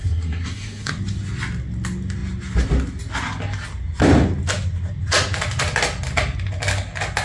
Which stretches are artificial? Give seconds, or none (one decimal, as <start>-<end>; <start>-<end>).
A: 0.0-0.9